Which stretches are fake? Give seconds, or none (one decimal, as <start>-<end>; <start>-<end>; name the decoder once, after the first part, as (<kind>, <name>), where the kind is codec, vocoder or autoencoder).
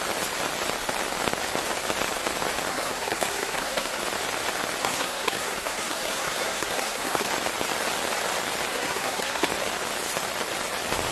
2.7-4.0 (codec, SNAC); 4.8-7.3; 8.7-9.5